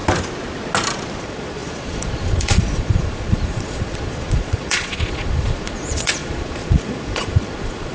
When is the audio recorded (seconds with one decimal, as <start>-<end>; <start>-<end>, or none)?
0.0-1.2